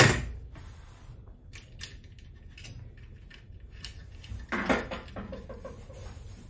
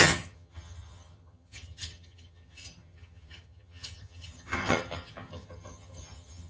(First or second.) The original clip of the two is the first